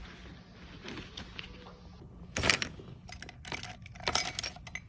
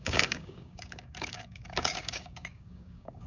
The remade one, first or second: second